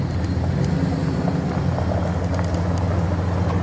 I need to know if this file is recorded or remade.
recorded